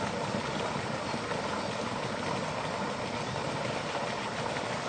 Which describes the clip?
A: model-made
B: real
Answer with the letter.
B